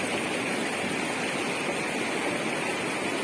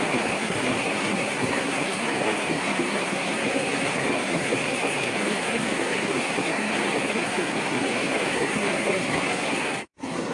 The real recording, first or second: first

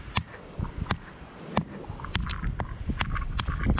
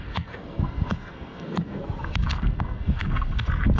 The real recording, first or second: first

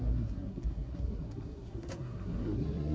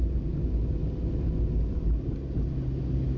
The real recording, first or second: second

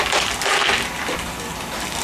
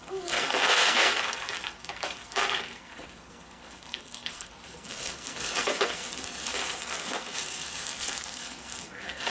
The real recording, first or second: first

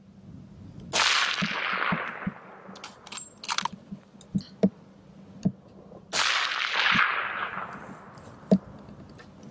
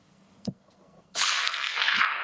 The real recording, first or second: first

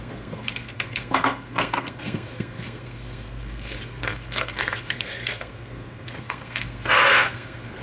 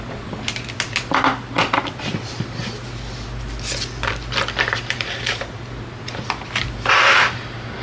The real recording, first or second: second